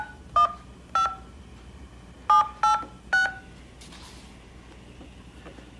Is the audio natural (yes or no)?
yes